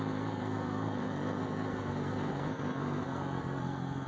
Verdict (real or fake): fake